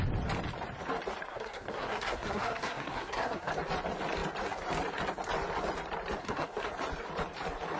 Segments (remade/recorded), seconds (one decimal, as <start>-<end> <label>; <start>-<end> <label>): 0.0-1.3 recorded; 1.3-3.5 remade; 3.5-6.2 recorded; 6.2-6.7 remade; 6.7-7.8 recorded